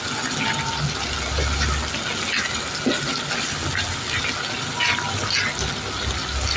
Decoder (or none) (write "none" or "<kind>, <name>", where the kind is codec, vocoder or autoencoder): none